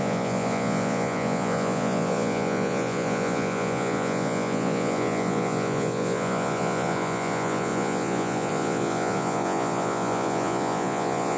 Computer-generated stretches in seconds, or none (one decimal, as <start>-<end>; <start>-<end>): 0.0-11.4